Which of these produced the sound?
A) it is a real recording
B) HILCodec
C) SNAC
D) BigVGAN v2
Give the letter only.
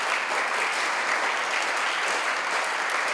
A